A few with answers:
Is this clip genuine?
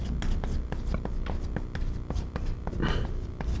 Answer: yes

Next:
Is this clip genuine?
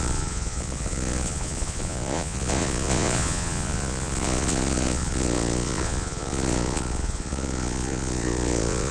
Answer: no